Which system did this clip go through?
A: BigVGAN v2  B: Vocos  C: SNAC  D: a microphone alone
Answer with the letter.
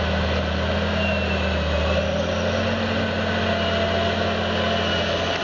D